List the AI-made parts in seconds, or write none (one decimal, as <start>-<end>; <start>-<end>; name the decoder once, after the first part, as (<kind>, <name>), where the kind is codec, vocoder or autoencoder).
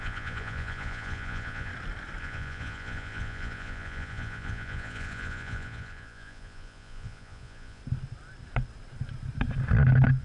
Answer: 0.0-1.7 (vocoder, Vocos); 2.2-7.8